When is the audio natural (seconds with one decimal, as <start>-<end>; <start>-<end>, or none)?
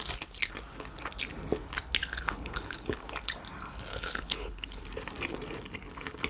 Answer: 0.0-2.0; 3.0-3.9; 4.8-6.3